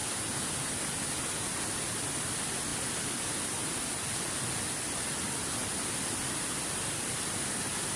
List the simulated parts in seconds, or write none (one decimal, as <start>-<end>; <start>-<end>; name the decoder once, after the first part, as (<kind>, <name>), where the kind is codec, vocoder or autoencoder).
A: 5.6-6.3 (vocoder, BigVGAN v2)